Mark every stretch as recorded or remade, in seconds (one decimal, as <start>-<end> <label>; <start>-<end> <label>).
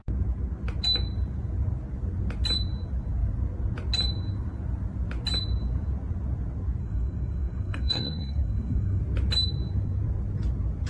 0.0-6.8 recorded; 6.8-9.0 remade; 9.0-10.9 recorded